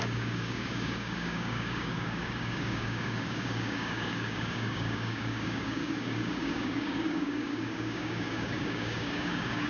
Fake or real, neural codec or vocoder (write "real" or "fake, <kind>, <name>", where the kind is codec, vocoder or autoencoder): fake, codec, DAC